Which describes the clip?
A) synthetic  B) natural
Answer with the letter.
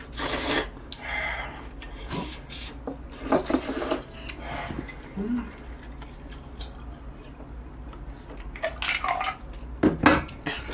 B